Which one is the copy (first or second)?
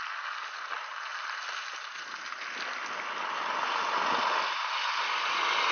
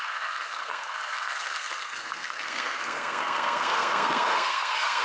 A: second